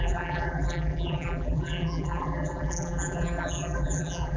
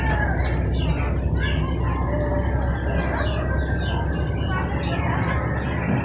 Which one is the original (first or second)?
second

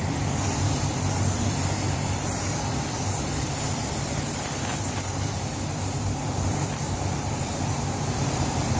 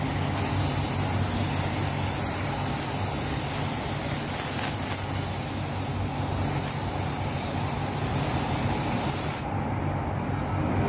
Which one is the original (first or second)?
second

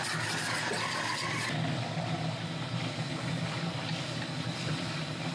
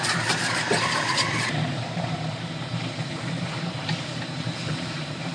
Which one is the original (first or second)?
first